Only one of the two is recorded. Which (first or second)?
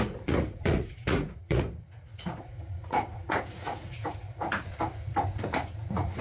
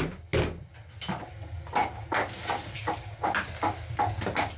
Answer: second